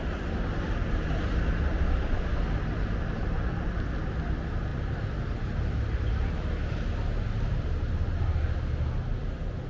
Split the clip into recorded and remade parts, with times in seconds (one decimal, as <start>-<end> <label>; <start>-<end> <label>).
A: 0.0-9.7 recorded